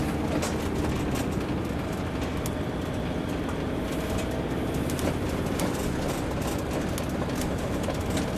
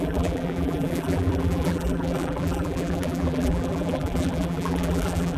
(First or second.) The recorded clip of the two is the first